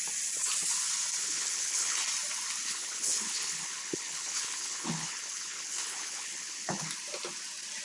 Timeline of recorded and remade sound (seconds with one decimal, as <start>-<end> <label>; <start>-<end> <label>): 0.0-1.2 recorded; 1.2-2.0 remade; 2.0-2.6 recorded; 2.6-6.9 remade; 6.9-7.8 recorded